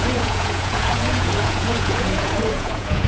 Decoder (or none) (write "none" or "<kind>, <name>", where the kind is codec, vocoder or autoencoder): vocoder, Vocos